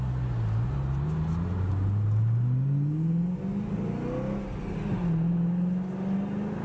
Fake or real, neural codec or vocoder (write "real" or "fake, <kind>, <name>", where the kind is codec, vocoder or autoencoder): real